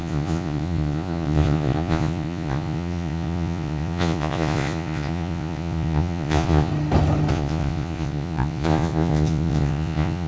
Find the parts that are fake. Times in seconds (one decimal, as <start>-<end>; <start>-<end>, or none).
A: 0.0-6.7; 7.3-10.3